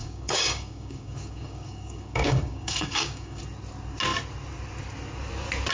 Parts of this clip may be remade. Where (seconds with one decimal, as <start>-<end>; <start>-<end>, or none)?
0.0-3.4